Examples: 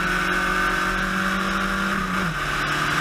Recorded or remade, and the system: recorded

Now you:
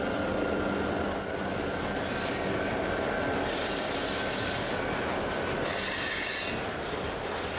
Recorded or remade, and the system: recorded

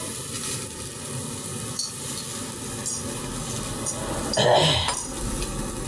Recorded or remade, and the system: recorded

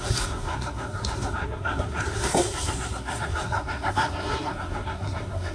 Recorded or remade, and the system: remade, codec, SNAC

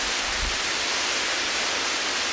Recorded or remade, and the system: recorded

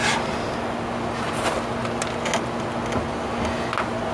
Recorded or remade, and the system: recorded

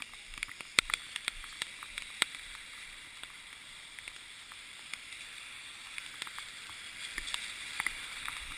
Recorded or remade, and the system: remade, vocoder, BigVGAN v2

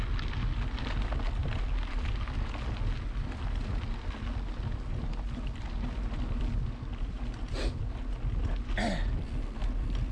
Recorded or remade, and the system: recorded